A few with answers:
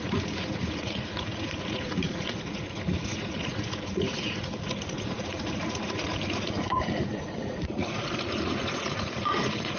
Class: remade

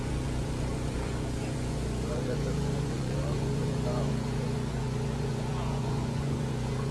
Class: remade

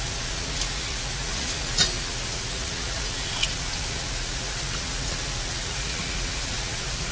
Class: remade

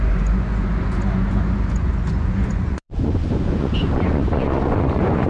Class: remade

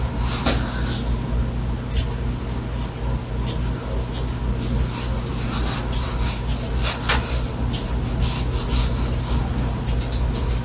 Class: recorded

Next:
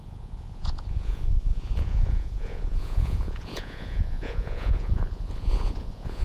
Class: remade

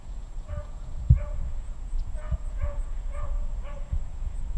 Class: remade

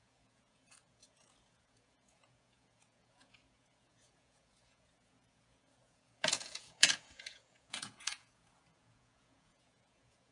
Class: remade